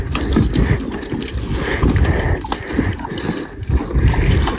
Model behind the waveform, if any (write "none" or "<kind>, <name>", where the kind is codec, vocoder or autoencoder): none